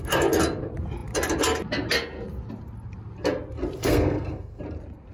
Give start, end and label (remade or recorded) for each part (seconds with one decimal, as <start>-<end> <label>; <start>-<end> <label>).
0.0-3.8 recorded; 3.8-4.6 remade; 4.6-5.1 recorded